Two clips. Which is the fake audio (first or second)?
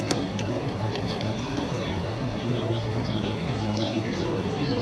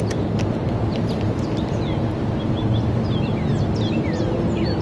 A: first